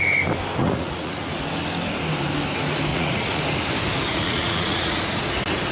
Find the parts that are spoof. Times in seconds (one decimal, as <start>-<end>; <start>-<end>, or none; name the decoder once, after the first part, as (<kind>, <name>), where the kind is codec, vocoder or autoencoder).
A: 0.6-1.3 (vocoder, Vocos); 2.9-3.4; 4.1-5.0